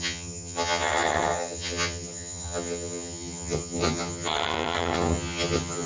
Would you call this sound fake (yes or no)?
yes